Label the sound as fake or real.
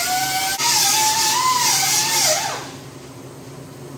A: real